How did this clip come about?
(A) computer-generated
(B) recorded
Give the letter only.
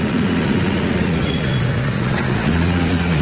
A